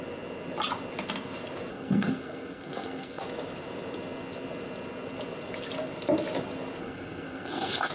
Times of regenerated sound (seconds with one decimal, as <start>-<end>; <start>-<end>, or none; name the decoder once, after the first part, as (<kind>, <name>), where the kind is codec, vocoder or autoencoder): 1.7-3.2 (codec, SNAC); 6.8-7.9